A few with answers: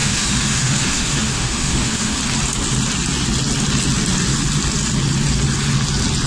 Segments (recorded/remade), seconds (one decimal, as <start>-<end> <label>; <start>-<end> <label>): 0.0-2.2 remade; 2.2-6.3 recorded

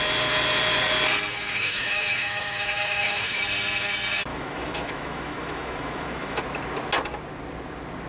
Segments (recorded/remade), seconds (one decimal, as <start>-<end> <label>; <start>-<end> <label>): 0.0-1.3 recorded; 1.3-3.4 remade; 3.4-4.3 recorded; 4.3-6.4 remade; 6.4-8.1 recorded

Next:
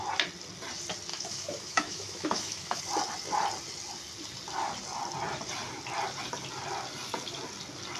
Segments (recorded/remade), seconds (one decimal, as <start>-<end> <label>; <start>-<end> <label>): 0.0-1.1 recorded; 1.1-2.8 remade; 2.8-8.0 recorded